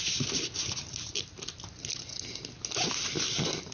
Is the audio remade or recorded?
recorded